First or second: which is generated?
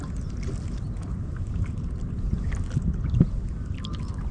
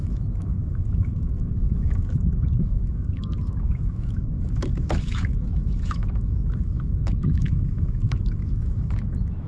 second